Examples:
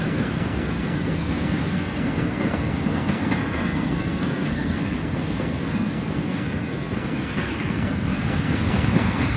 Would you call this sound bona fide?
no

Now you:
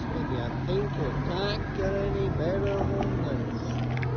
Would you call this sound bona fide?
yes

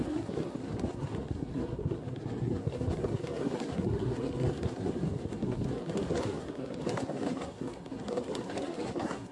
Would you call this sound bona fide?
no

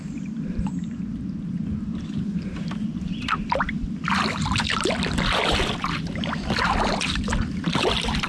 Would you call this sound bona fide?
no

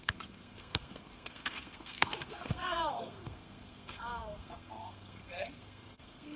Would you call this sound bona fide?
no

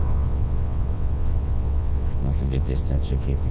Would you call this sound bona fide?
no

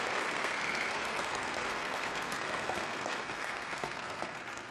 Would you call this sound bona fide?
no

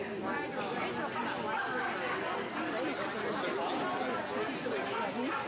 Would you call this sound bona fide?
yes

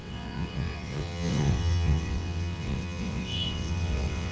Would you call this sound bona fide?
no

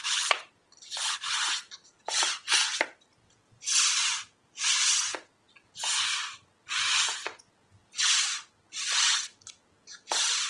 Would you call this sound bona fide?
yes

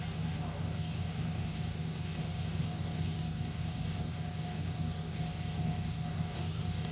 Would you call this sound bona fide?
no